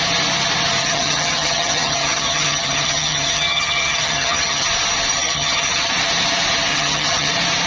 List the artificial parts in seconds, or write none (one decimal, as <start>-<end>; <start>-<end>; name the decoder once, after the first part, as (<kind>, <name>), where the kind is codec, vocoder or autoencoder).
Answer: 0.8-4.7 (vocoder, HiFi-GAN); 5.2-5.9; 6.7-7.3